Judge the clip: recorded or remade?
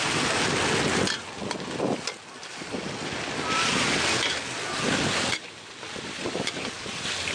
recorded